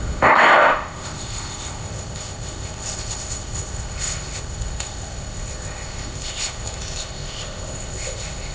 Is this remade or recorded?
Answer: remade